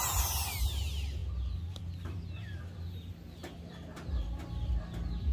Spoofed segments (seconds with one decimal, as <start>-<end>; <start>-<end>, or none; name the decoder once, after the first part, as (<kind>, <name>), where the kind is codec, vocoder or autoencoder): none